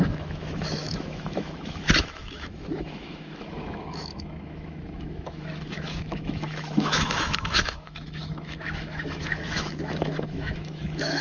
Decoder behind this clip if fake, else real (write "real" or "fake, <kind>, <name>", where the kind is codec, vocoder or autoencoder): fake, autoencoder, DAC-VAE